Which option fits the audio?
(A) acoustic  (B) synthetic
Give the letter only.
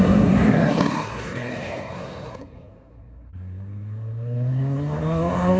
B